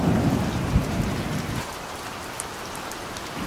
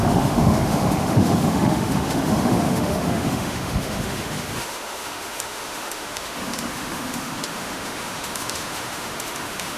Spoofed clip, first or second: second